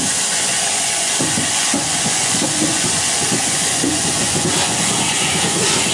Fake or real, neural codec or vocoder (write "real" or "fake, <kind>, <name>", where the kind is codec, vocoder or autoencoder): fake, vocoder, Vocos